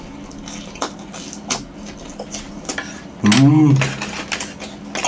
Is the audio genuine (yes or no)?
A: yes